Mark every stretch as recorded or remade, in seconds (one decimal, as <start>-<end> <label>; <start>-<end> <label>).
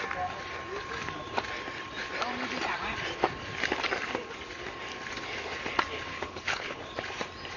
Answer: 0.0-6.1 recorded; 6.1-6.8 remade; 6.8-7.6 recorded